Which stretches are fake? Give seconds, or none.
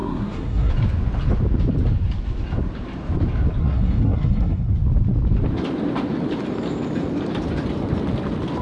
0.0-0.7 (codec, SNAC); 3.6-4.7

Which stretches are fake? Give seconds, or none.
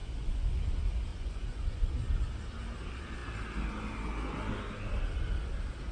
0.0-0.6 (vocoder, Vocos); 1.1-1.9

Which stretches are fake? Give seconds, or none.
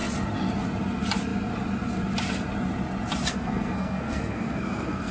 3.3-5.1 (codec, SNAC)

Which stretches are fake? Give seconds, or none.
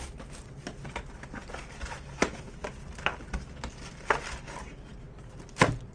none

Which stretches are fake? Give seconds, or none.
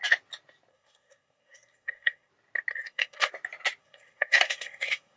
0.7-2.3 (codec, SNAC); 2.7-3.3; 3.8-5.2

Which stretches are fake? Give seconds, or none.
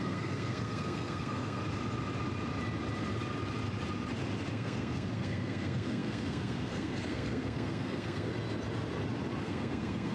0.0-1.6 (codec, SNAC); 4.5-8.3; 9.4-10.1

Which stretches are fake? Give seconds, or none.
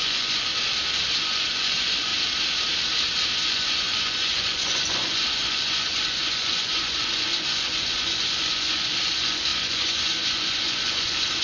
0.0-0.5 (vocoder, Vocos); 1.2-2.1; 3.5-11.4